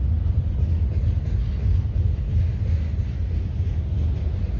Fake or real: real